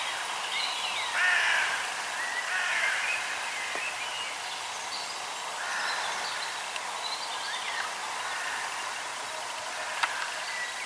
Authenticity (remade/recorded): recorded